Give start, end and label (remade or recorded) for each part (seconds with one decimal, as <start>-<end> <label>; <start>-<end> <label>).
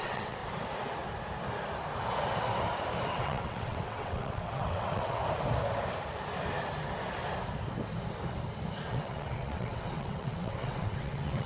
0.0-0.4 remade; 0.4-3.1 recorded; 3.1-5.2 remade; 5.2-8.9 recorded; 8.9-11.5 remade